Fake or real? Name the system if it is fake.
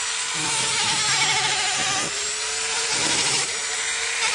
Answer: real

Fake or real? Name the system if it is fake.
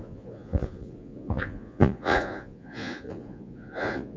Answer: fake, vocoder, Vocos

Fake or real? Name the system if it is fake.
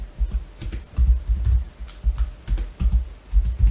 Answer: real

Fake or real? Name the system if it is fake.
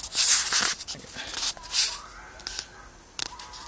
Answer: real